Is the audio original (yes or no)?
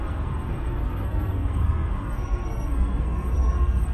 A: no